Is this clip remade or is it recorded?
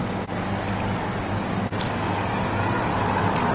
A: recorded